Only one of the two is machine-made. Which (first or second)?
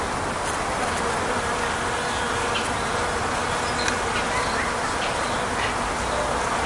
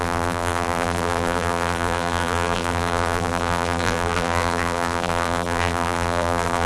second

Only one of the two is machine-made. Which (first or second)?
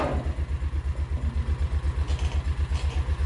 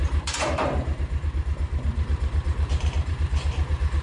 second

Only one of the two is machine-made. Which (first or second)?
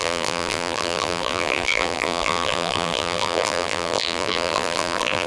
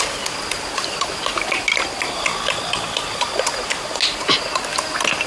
first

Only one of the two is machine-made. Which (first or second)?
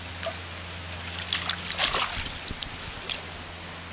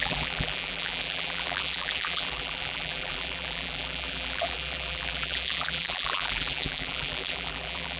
second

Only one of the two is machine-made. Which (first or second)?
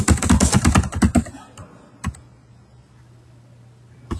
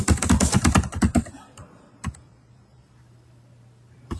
second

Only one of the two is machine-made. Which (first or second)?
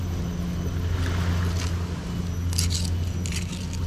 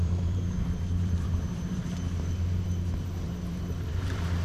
second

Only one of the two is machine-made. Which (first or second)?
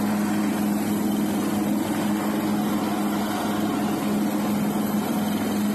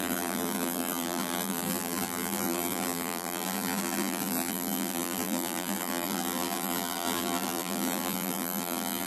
second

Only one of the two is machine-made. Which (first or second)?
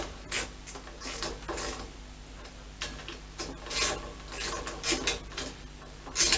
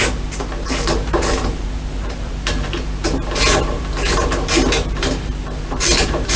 second